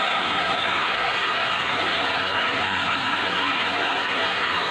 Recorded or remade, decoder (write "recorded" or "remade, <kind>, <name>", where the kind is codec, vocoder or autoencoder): remade, codec, SNAC